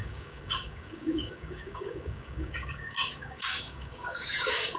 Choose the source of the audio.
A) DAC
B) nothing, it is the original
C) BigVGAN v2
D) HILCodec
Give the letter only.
A